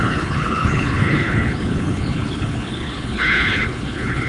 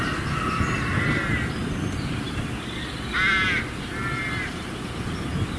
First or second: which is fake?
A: first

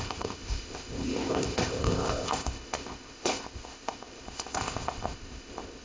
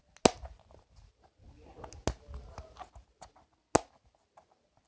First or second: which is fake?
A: first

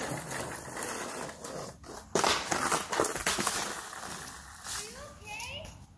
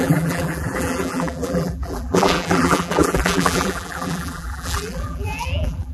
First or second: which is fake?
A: second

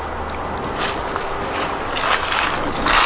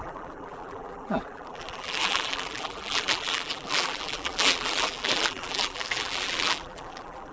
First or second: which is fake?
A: second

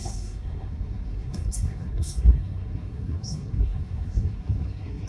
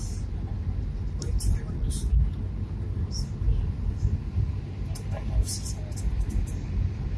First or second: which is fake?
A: first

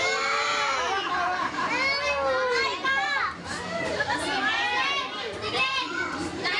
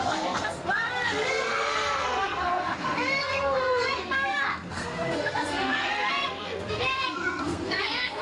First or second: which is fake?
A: second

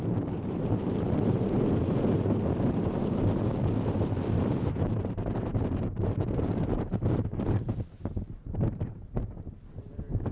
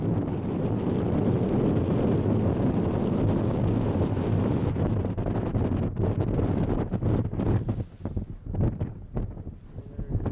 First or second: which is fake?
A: first